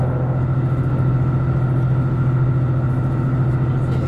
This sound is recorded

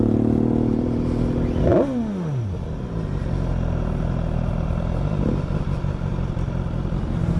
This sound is recorded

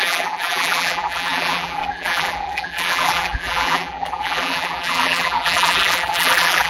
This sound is remade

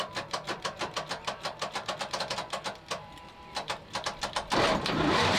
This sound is remade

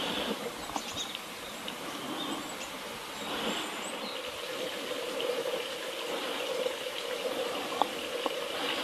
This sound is recorded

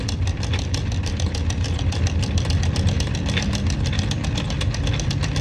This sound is remade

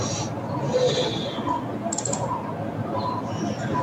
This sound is remade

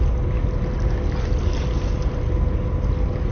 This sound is recorded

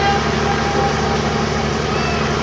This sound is recorded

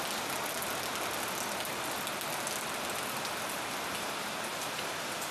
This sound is recorded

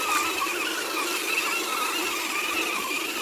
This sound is remade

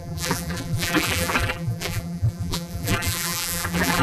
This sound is remade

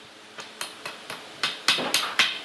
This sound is recorded